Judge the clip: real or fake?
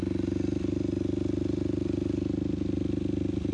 real